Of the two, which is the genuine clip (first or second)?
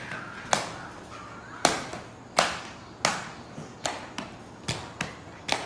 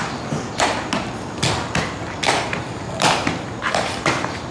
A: first